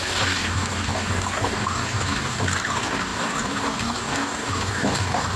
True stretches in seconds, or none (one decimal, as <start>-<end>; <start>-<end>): none